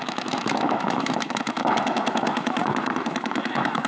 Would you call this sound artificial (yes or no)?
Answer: yes